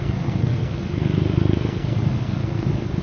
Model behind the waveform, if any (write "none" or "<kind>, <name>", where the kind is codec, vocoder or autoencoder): codec, SNAC